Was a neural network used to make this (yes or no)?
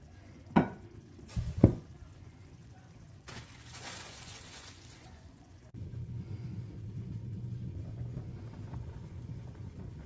yes